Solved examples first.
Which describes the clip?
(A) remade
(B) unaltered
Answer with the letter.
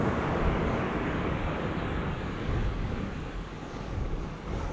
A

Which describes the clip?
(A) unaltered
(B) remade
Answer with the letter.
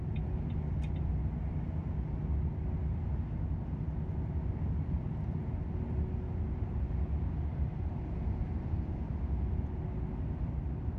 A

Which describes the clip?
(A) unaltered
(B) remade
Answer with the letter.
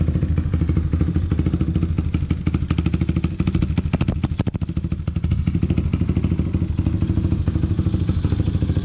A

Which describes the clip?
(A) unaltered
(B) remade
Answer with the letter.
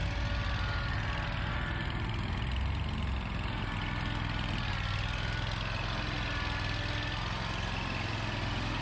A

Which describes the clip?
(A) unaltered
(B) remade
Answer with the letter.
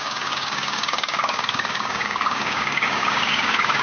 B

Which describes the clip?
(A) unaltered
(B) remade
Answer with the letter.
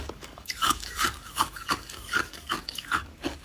B